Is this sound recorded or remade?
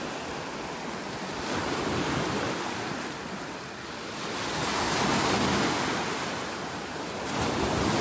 recorded